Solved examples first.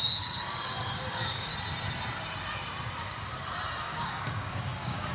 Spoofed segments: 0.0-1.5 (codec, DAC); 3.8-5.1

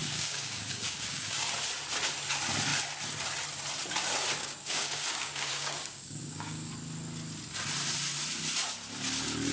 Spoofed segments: 0.0-1.5 (codec, DAC); 4.4-6.7

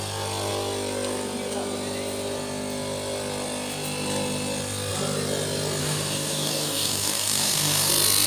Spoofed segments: 5.8-7.9 (codec, DAC)

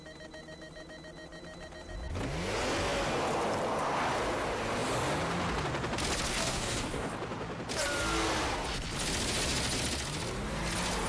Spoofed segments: 6.3-7.1 (codec, DAC)

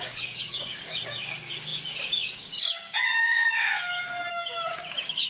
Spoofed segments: 0.0-5.3 (codec, DAC)

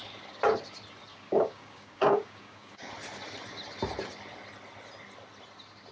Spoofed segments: 1.1-2.9 (codec, DAC)

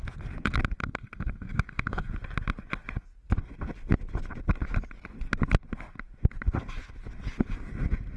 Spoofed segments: 0.8-2.1 (codec, DAC)

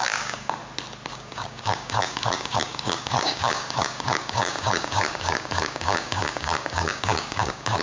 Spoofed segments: 0.0-0.6 (codec, DAC); 1.1-7.8